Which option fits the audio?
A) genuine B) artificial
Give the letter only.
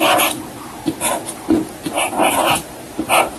A